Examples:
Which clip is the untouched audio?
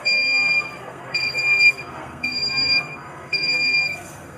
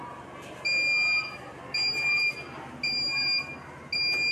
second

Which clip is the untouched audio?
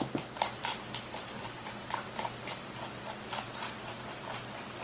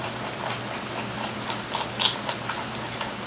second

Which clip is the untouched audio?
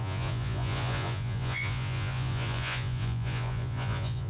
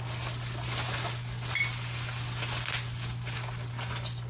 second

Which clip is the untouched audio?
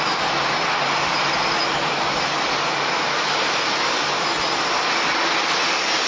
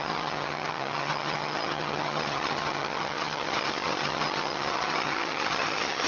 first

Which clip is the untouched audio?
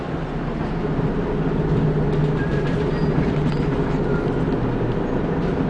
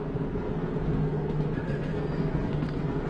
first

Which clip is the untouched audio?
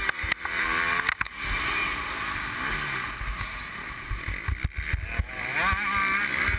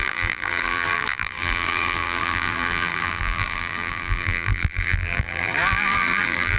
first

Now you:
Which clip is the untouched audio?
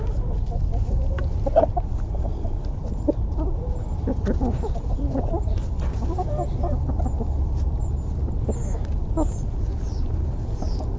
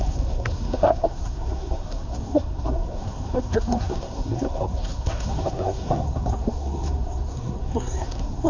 first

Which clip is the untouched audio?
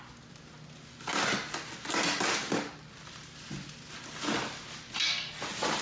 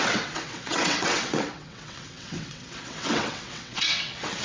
first